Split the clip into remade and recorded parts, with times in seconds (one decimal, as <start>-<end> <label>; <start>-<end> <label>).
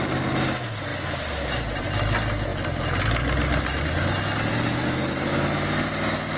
0.0-6.4 recorded